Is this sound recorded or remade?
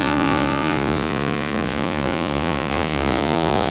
remade